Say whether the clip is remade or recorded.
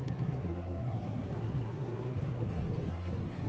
remade